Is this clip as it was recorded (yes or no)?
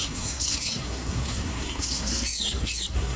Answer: no